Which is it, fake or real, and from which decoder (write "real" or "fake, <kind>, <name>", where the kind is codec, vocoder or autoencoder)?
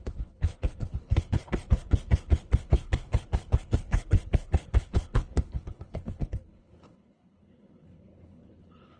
fake, codec, HILCodec